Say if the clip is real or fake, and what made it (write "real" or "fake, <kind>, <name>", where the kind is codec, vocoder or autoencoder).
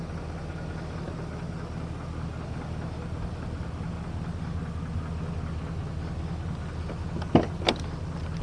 real